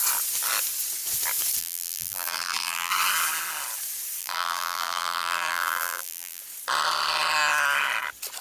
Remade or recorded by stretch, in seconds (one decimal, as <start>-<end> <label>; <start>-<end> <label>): 0.0-1.6 recorded; 1.6-2.9 remade; 2.9-4.2 recorded; 4.2-6.4 remade; 6.4-8.4 recorded